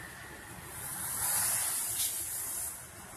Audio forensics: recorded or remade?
recorded